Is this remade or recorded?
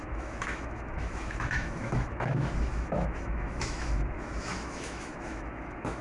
remade